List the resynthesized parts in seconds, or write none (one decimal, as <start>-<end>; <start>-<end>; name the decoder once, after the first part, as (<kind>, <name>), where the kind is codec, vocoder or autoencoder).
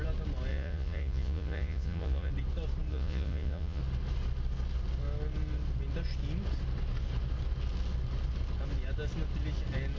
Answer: 0.5-2.3 (vocoder, Vocos); 2.9-3.8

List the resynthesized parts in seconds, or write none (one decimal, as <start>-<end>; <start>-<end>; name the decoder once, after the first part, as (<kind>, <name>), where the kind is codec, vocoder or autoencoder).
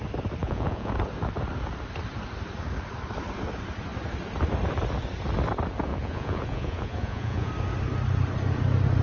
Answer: 0.4-0.9 (vocoder, Vocos); 5.9-7.5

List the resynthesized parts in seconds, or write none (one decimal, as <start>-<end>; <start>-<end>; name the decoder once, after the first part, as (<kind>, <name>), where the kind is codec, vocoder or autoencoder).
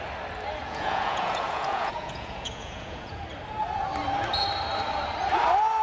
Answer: 0.6-3.2 (vocoder, Vocos)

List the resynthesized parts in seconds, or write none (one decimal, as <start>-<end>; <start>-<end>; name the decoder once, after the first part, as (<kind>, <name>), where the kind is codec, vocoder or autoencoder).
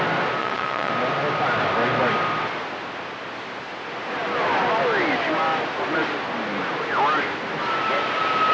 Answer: 0.4-0.9 (vocoder, Vocos)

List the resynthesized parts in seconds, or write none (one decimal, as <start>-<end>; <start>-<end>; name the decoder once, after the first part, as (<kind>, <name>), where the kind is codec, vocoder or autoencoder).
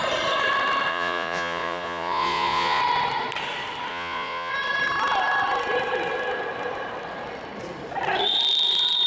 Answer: 0.9-2.8 (vocoder, Vocos); 3.9-4.5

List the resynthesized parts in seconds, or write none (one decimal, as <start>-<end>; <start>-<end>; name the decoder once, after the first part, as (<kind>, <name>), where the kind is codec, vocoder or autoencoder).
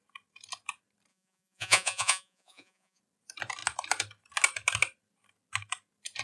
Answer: 1.1-3.0 (vocoder, Vocos)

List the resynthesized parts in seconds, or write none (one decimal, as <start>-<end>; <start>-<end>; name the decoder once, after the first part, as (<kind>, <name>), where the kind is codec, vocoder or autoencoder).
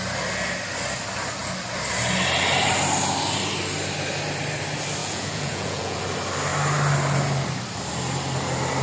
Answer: 5.0-6.0 (vocoder, Vocos)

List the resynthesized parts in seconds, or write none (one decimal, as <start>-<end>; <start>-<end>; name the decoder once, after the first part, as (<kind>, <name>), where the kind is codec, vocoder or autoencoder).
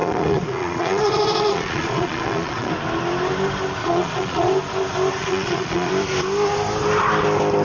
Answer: 0.0-2.7 (vocoder, Vocos); 3.8-4.5; 5.2-5.9